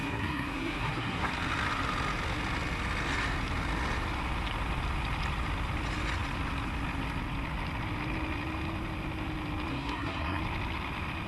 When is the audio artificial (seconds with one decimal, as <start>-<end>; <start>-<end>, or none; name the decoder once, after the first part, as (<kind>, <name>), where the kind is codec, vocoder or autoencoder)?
0.0-1.3 (codec, SNAC); 9.7-10.4